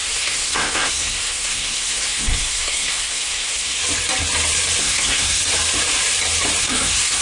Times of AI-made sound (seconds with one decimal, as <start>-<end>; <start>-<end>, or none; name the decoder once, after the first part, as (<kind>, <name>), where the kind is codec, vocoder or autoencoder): 0.0-3.8 (codec, SNAC); 4.8-5.4; 6.6-7.2